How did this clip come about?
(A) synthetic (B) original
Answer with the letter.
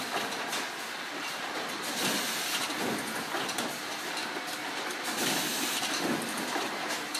B